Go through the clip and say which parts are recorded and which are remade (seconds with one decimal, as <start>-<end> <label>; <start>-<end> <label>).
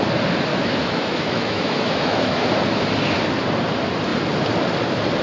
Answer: 0.0-0.5 recorded; 0.5-2.5 remade; 2.5-5.2 recorded